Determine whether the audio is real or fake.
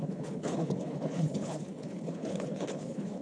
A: fake